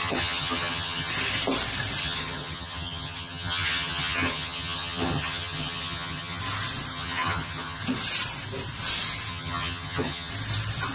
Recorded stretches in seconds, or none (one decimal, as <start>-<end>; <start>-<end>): 1.1-2.0; 6.4-6.9; 7.8-9.3; 10.3-10.9